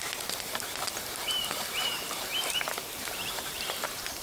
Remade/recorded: remade